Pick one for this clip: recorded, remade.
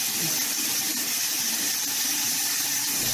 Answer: remade